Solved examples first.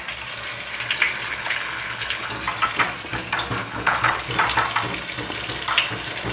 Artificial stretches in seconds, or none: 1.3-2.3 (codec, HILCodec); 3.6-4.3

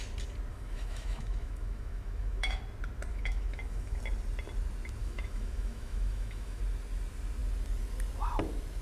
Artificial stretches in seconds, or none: 0.5-2.6 (autoencoder, DAC-VAE); 3.1-4.0; 5.0-6.6